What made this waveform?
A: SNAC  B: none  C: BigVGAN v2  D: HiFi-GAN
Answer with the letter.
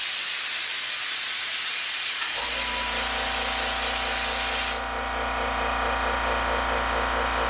B